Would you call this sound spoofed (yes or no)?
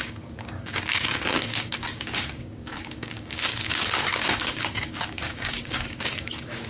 yes